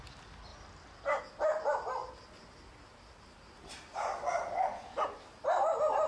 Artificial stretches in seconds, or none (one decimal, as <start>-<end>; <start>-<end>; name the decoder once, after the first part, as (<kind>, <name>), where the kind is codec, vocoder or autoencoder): none